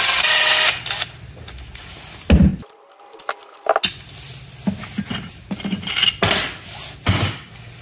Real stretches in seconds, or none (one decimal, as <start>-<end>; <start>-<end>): 0.0-7.8